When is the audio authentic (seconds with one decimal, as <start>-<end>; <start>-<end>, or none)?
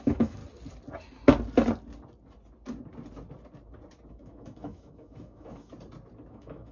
0.4-4.1; 5.7-6.3